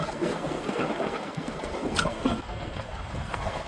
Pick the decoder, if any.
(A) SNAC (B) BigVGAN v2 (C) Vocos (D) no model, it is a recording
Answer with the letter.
A